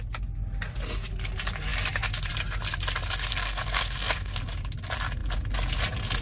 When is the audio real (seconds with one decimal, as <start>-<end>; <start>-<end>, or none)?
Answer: 0.0-3.3; 4.4-6.2